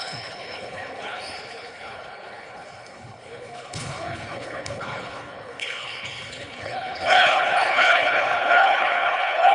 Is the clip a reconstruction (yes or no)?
yes